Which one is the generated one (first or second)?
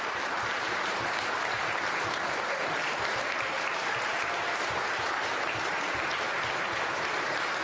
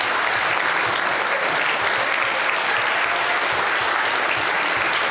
first